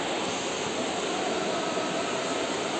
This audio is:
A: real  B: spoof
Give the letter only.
A